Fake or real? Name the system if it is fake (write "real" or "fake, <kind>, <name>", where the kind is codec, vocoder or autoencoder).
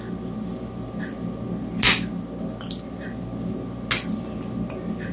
real